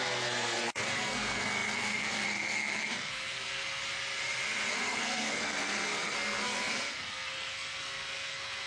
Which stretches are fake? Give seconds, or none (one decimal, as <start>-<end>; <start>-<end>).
0.0-3.8; 4.7-8.7